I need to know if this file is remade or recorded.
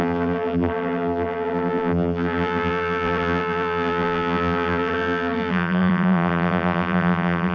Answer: remade